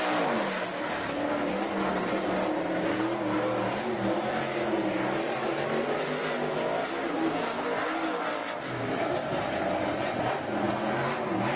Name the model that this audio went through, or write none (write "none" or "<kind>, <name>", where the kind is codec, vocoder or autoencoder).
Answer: none